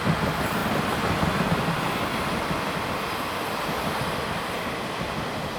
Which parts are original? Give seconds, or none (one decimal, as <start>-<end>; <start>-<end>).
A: 0.0-5.6